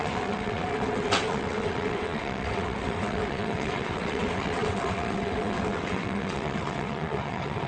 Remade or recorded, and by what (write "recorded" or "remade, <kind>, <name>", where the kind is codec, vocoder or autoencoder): remade, vocoder, WaveNeXt